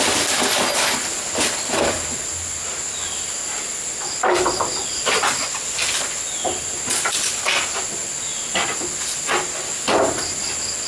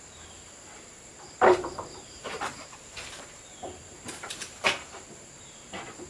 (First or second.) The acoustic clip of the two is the first